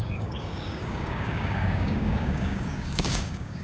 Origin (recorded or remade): remade